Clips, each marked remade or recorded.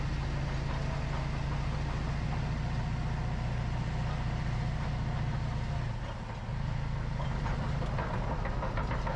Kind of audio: recorded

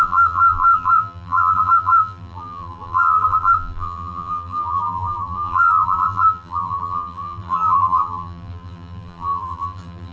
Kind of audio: remade